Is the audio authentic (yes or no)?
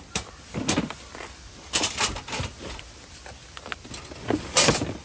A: yes